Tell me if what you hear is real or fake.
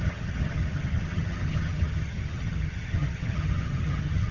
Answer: fake